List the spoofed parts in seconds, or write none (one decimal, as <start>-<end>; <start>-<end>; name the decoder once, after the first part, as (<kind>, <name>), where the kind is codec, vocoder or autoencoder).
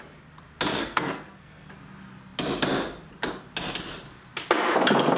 0.7-1.7 (codec, SNAC)